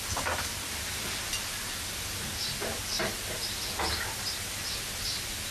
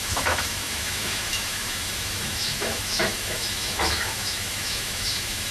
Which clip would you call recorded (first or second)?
first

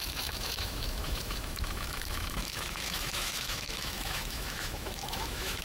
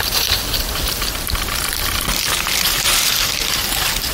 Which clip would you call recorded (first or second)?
second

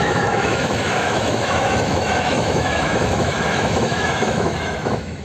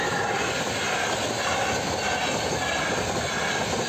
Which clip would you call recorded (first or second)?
second